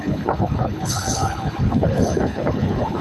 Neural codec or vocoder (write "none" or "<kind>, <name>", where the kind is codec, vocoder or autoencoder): codec, HILCodec